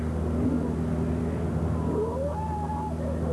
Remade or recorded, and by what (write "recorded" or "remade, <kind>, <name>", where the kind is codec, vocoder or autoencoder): recorded